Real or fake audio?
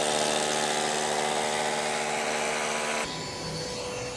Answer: real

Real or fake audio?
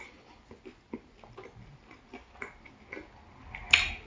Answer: real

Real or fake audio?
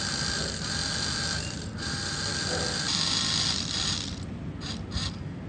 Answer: real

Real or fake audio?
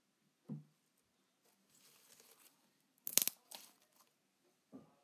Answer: real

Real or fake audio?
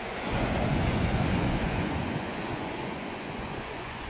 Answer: fake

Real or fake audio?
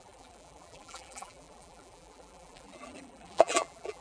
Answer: fake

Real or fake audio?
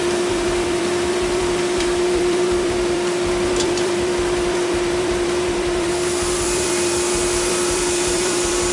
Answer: fake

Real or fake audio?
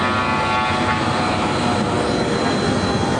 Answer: real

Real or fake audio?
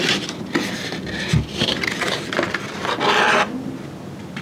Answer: real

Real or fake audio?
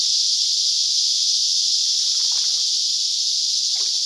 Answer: real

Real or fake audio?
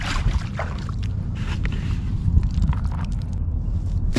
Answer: fake